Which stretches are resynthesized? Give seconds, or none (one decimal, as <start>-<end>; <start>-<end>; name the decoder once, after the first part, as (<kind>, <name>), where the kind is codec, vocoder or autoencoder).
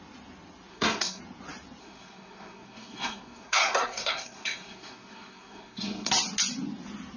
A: 0.7-1.2 (codec, SNAC); 1.8-6.1